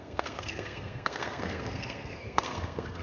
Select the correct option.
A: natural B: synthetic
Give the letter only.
B